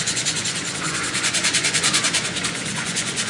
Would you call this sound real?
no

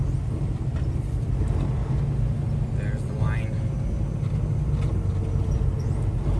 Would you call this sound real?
yes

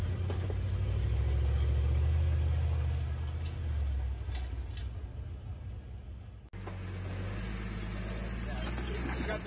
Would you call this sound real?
yes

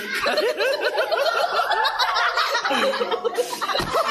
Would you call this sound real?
yes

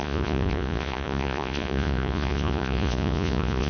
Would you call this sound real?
no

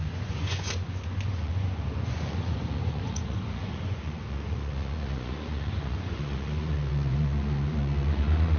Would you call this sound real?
no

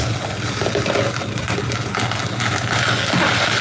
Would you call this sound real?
yes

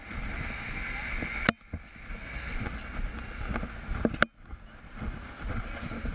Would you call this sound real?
yes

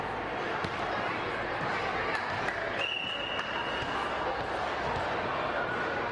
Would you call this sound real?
yes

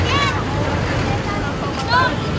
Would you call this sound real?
yes